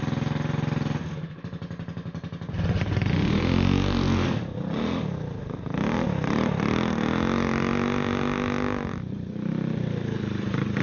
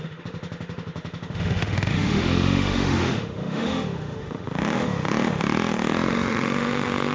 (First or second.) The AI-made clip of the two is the second